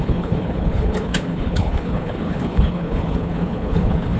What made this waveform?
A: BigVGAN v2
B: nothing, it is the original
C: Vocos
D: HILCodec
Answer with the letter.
D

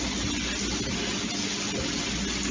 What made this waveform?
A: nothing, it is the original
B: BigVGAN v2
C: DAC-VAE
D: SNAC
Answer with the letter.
A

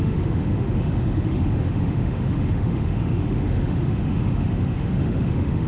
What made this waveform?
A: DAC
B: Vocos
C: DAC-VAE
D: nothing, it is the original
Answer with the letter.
C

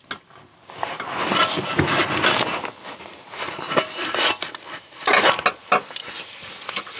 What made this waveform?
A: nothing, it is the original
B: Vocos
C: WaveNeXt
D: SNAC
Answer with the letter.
A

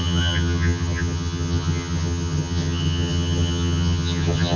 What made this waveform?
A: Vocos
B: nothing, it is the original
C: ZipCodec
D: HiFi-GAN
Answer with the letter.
D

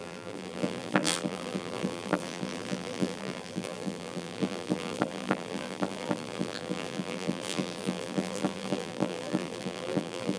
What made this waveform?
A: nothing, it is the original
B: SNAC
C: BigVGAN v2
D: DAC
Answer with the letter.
C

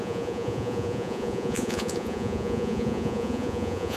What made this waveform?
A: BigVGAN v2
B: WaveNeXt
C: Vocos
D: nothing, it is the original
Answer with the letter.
C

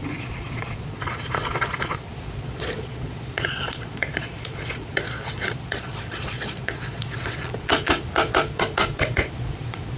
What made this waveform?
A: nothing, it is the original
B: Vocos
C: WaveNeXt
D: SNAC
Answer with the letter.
B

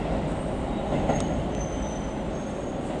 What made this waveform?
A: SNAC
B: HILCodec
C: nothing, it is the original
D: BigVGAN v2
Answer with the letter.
C